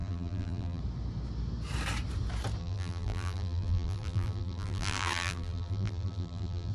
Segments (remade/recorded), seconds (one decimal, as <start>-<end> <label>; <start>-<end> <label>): 0.0-0.8 remade; 0.8-2.6 recorded; 2.6-6.7 remade